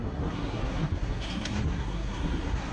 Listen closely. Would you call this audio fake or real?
fake